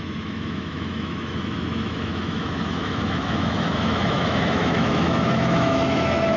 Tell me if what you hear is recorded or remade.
remade